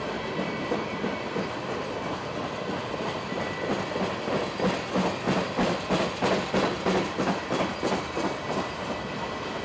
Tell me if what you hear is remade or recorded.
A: recorded